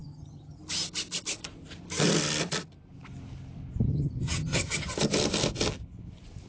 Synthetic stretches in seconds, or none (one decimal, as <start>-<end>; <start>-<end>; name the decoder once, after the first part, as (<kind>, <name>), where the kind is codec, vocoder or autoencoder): 0.0-0.6 (vocoder, HiFi-GAN); 3.9-4.9